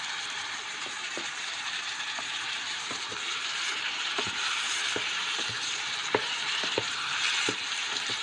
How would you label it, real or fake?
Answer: fake